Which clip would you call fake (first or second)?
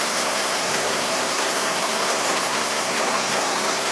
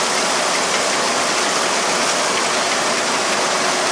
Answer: first